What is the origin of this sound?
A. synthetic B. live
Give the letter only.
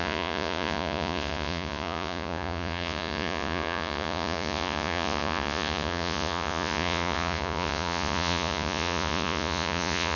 A